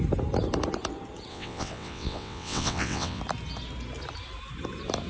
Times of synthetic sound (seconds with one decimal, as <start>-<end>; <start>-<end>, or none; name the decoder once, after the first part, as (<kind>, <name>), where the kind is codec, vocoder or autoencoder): 1.3-3.2 (vocoder, WaveNeXt)